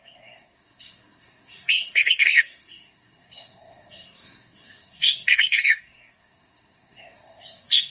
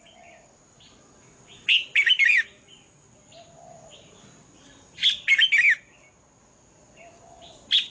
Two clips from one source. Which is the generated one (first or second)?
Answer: first